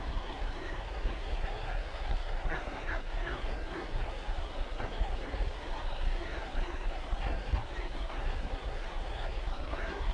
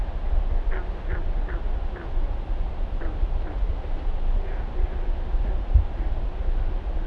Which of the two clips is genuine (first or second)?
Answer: second